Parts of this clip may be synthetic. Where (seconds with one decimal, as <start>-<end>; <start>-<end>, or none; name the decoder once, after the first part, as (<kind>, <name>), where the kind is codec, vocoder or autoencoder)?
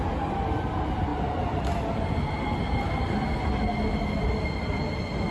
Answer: none